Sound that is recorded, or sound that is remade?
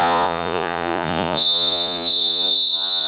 remade